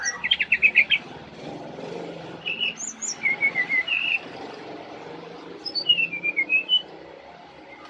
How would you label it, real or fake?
fake